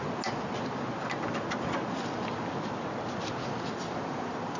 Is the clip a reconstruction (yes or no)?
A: no